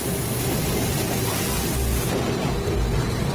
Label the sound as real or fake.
real